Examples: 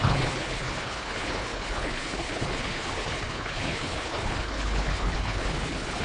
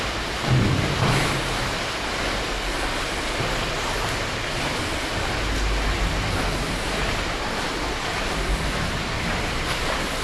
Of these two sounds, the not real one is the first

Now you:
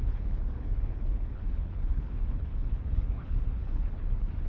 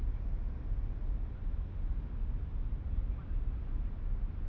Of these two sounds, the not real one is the first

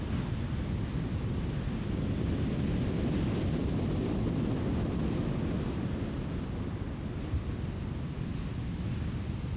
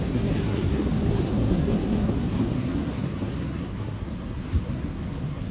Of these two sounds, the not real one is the second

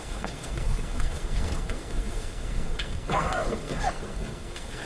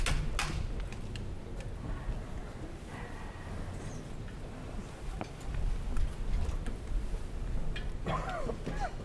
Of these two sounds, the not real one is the first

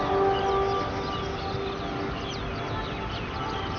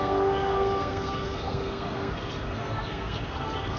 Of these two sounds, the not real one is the second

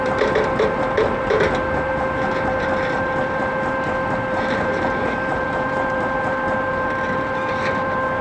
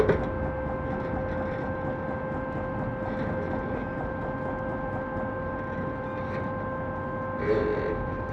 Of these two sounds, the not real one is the first